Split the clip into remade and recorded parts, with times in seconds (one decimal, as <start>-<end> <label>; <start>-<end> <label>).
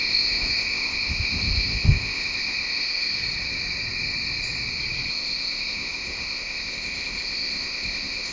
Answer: 0.0-3.2 remade; 3.2-5.1 recorded; 5.1-8.3 remade